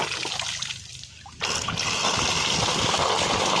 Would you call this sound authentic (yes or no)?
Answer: yes